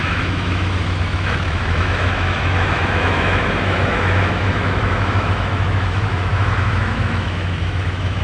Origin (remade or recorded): remade